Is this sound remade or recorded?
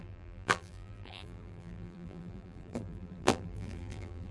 remade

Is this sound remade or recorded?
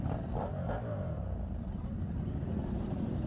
recorded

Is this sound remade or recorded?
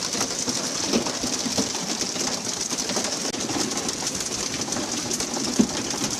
recorded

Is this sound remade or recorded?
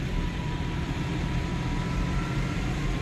remade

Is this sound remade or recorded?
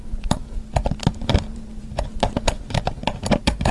remade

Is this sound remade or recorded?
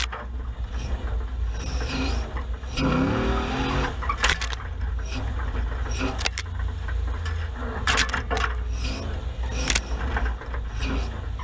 recorded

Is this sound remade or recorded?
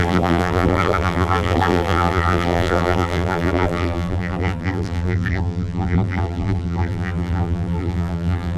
remade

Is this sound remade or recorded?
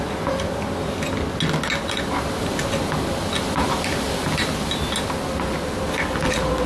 recorded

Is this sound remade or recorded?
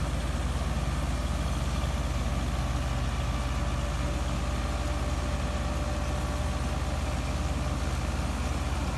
recorded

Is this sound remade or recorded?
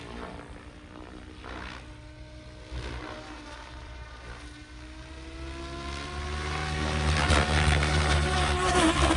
recorded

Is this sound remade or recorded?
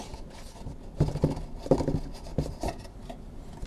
recorded